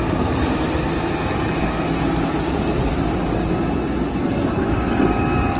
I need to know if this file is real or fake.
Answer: real